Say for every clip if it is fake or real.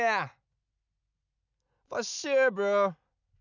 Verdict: real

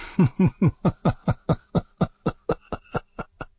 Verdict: real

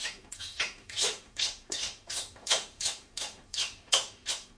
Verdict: fake